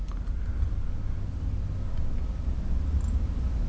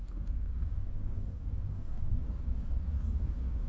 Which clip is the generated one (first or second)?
second